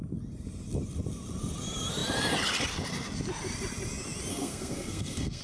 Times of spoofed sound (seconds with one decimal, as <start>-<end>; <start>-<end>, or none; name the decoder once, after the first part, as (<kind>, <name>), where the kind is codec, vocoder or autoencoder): 4.3-5.4 (codec, SNAC)